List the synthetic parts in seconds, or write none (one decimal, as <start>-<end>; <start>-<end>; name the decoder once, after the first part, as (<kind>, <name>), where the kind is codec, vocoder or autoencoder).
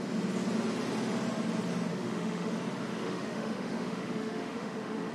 1.9-2.5 (autoencoder, DAC-VAE); 2.9-5.1